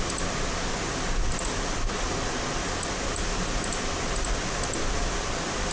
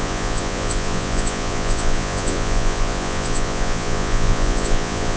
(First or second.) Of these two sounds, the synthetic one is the second